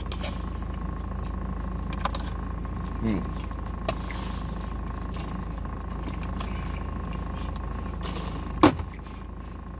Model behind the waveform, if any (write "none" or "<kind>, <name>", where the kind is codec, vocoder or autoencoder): none